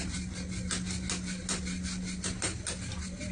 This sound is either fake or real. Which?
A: real